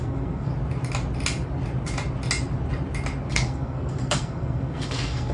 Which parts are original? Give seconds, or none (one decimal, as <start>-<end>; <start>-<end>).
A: 0.5-3.3